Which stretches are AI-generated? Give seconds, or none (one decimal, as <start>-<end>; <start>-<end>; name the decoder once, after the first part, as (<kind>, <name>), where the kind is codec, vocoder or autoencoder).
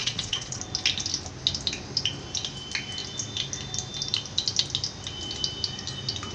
0.0-0.6 (vocoder, Vocos)